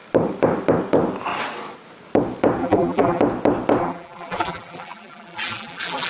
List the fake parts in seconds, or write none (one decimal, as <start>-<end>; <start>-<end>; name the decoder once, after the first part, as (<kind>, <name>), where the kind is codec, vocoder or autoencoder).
2.6-3.2 (vocoder, BigVGAN v2); 3.8-6.1